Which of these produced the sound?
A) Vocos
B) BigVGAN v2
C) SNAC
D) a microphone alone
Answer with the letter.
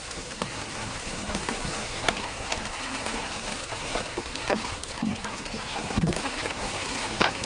C